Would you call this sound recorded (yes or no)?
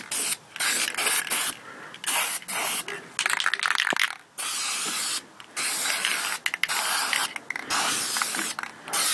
yes